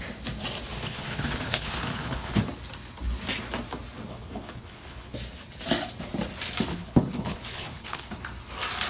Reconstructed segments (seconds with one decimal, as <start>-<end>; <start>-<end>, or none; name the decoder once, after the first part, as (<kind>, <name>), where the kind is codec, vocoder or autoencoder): 0.7-2.4 (codec, HILCodec); 4.1-5.1; 6.7-8.1